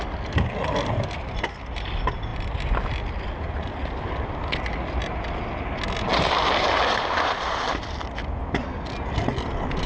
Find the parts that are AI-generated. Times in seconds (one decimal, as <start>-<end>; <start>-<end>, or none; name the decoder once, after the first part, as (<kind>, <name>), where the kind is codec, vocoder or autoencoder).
6.1-7.7 (vocoder, BigVGAN v2)